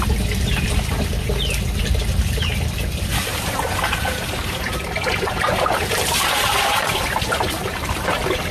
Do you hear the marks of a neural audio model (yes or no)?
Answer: yes